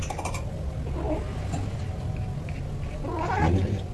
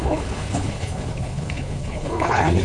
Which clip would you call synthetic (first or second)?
second